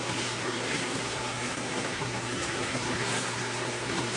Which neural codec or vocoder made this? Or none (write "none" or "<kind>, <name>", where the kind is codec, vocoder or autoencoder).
codec, SNAC